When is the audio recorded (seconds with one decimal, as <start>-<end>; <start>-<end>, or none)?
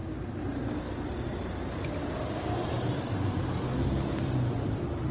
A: 0.0-5.1